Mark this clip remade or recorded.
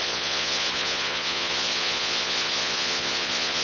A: remade